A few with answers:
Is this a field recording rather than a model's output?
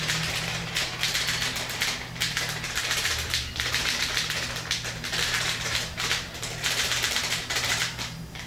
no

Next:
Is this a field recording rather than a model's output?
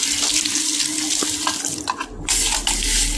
yes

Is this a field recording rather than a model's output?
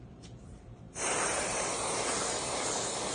no